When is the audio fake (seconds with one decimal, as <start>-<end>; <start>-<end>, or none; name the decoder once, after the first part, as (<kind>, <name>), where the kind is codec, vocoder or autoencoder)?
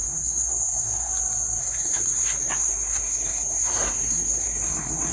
0.0-1.1 (codec, SNAC); 1.6-5.1